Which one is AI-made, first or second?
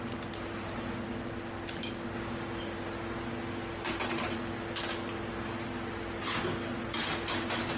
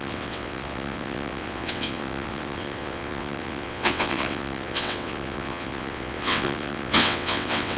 second